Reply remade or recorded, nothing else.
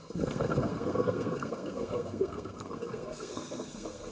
remade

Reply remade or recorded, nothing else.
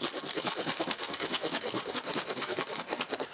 remade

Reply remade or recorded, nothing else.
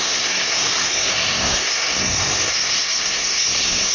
remade